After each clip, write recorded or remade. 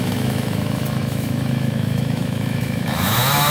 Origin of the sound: remade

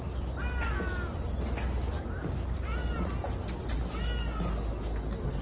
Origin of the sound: recorded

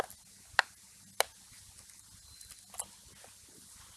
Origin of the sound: recorded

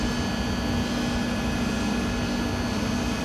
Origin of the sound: recorded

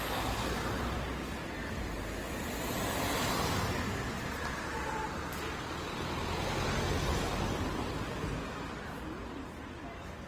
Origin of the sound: recorded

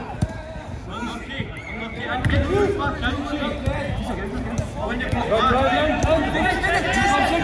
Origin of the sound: recorded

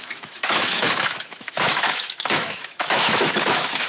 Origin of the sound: remade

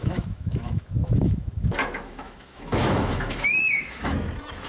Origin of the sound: remade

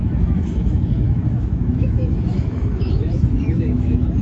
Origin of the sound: remade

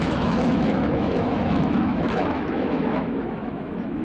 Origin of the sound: remade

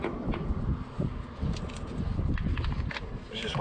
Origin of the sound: recorded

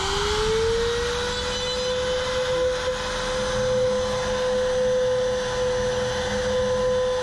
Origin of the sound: recorded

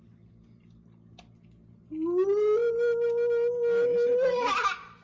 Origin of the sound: recorded